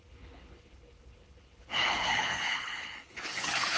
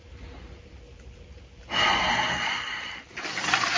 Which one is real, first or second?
second